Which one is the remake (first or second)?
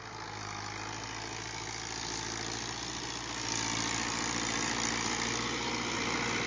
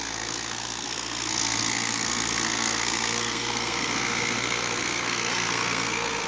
second